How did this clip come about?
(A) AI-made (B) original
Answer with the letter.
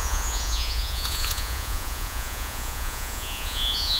A